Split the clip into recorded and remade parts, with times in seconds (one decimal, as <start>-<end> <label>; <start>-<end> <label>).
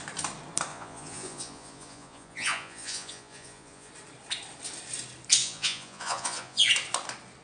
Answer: 0.0-0.7 recorded; 0.7-3.9 remade; 3.9-5.4 recorded; 5.4-6.7 remade; 6.7-7.4 recorded